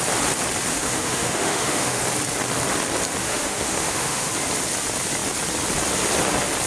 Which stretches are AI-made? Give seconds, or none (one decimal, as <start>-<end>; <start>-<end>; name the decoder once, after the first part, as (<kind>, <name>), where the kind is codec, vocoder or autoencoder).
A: 0.7-2.0 (autoencoder, DAC-VAE); 3.2-4.3